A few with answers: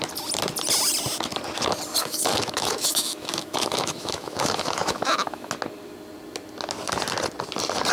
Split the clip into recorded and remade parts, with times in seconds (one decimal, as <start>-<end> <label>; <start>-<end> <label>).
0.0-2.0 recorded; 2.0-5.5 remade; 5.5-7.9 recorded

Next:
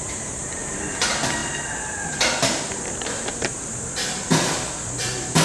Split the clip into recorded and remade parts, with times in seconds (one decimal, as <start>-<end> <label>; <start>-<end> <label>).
0.0-1.4 remade; 1.4-2.6 recorded; 2.6-5.4 remade

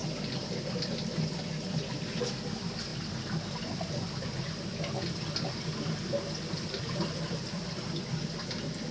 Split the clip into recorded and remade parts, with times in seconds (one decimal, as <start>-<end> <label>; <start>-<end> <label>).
0.0-8.9 recorded

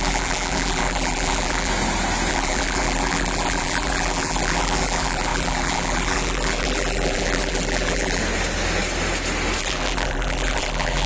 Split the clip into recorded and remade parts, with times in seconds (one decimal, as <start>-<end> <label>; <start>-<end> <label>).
0.0-1.7 remade; 1.7-2.3 recorded; 2.3-8.2 remade; 8.2-9.6 recorded; 9.6-11.1 remade